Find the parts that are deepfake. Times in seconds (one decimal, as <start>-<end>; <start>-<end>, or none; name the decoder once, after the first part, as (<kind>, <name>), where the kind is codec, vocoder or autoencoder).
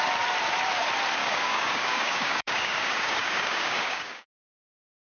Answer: 1.2-4.3 (codec, DAC)